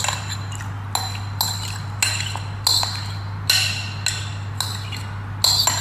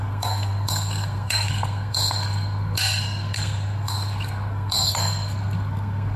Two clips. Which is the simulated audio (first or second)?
second